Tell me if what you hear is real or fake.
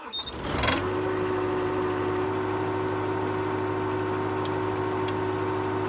real